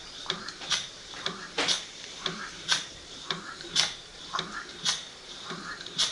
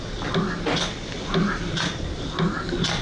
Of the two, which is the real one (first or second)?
second